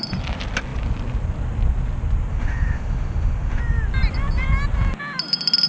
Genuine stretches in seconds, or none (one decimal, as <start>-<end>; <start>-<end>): 0.0-2.3; 3.6-5.7